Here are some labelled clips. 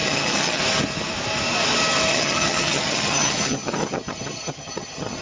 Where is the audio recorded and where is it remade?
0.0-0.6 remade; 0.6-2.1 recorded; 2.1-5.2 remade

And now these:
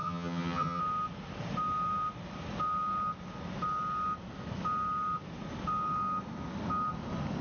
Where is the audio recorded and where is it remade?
0.0-0.8 remade; 0.8-7.4 recorded

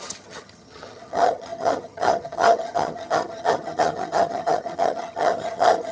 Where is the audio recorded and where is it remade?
0.0-5.9 remade